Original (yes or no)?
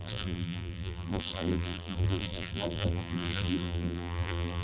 no